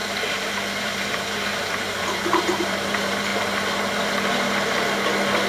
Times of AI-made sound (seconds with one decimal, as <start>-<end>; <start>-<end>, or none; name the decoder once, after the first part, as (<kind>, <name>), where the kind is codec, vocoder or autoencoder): 0.8-3.3 (vocoder, BigVGAN v2)